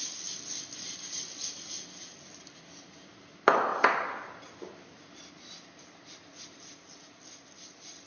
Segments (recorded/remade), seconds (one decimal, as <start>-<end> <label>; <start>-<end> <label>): 0.0-8.1 recorded